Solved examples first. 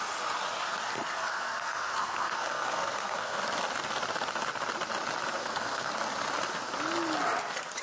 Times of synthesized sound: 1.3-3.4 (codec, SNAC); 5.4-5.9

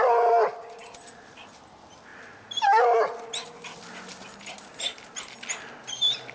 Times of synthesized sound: none

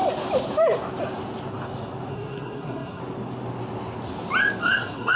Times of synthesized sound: 2.1-3.0 (codec, SNAC); 4.6-5.2